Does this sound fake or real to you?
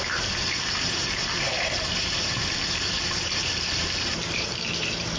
fake